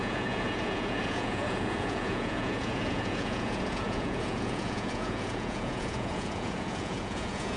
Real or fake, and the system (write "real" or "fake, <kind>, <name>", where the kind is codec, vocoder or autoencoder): fake, vocoder, Vocos